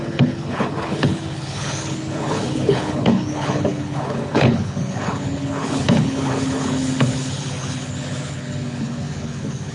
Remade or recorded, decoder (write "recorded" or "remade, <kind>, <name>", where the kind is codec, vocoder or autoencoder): remade, codec, HILCodec